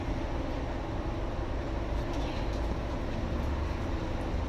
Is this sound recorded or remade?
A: recorded